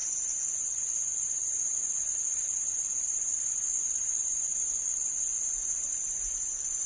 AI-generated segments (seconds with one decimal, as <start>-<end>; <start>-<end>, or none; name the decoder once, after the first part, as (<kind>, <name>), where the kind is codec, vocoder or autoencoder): none